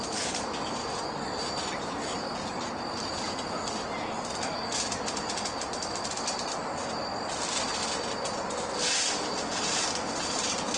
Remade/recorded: recorded